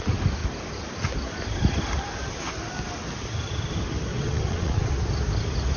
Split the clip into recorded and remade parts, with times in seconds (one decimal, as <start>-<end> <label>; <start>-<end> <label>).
0.0-4.1 recorded; 4.1-4.9 remade; 4.9-5.8 recorded